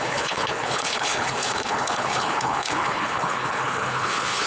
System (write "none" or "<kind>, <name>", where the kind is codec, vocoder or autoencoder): codec, HILCodec